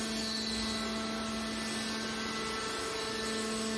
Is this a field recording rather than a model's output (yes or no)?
yes